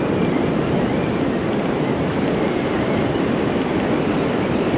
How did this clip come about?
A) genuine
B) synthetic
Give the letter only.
A